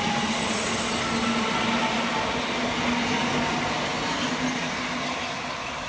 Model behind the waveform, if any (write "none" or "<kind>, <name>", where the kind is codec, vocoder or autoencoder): none